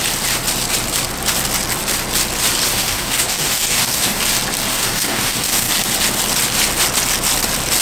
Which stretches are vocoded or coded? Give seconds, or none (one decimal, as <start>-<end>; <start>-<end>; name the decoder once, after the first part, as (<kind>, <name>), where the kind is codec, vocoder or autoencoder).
2.7-4.2 (codec, DAC); 4.7-5.7